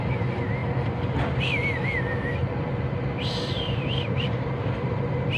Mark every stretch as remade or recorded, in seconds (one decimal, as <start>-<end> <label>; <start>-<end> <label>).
0.0-0.6 recorded; 0.6-1.4 remade; 1.4-2.4 recorded; 2.4-5.4 remade